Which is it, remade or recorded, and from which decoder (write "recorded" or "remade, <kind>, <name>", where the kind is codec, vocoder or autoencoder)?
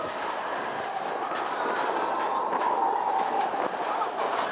recorded